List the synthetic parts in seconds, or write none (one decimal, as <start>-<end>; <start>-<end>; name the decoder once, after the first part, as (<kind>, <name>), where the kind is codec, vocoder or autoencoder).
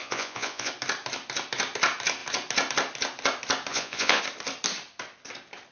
0.0-0.7 (vocoder, Vocos); 3.7-4.2